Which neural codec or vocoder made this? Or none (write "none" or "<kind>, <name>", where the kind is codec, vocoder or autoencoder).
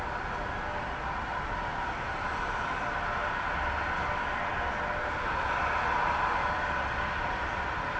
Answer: none